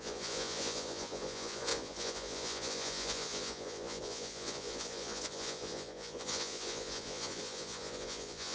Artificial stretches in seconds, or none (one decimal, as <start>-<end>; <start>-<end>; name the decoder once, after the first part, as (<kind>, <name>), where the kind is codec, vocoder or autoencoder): 0.0-8.5 (vocoder, Vocos)